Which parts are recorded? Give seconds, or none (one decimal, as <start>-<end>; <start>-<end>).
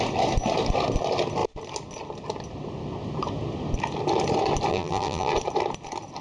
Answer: 0.0-4.7; 5.3-6.2